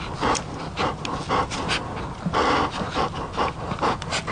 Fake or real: real